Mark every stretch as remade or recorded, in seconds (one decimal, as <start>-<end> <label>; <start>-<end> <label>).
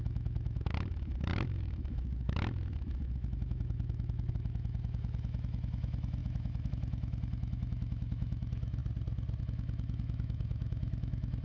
0.0-8.8 remade; 8.8-9.4 recorded; 9.4-11.4 remade